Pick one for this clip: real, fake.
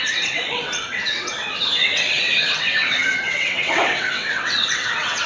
fake